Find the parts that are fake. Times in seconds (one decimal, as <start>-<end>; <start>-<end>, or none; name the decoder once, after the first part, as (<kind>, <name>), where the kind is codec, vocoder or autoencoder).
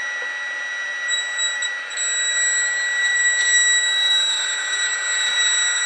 none